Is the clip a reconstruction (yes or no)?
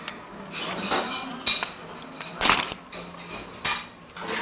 no